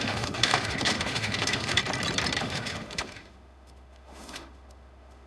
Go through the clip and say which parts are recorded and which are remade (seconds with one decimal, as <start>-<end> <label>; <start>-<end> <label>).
0.0-1.8 remade; 1.8-2.4 recorded; 2.4-5.3 remade

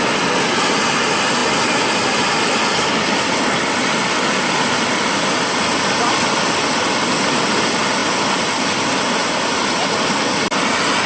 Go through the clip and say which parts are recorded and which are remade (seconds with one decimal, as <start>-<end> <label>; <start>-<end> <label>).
0.0-11.1 recorded